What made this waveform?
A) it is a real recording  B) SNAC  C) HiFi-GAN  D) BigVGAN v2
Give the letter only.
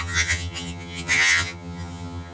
C